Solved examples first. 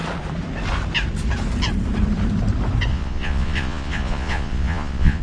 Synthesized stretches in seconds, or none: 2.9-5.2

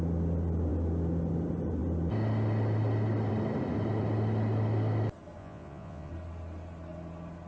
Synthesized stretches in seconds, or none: 5.4-6.1

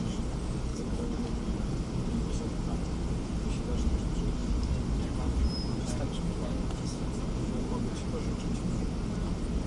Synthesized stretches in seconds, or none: 0.7-1.3

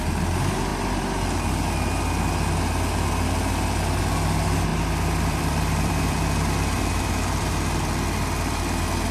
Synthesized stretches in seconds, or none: 4.7-7.5

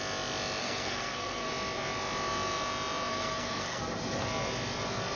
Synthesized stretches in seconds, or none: 0.6-1.5; 3.1-3.8

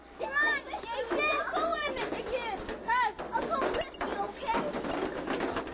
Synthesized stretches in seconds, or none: none

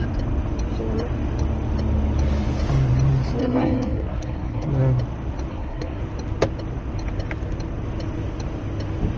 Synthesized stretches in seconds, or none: 3.4-4.7; 5.5-6.0

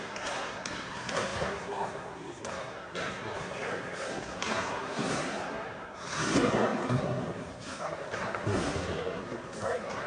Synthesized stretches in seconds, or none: 0.0-10.1